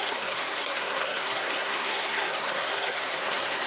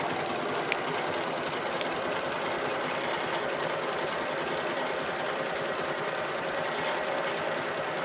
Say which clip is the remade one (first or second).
first